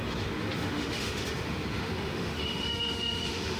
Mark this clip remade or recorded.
remade